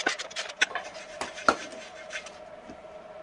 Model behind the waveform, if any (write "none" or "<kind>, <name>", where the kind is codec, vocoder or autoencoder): vocoder, BigVGAN v2